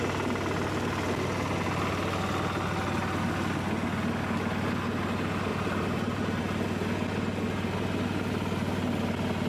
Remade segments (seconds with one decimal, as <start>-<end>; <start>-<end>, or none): 5.5-6.4